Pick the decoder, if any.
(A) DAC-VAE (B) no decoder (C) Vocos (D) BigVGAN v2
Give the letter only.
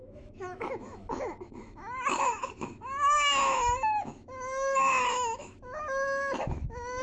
A